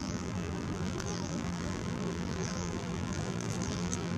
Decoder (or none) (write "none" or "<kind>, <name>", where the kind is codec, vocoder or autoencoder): vocoder, BigVGAN v2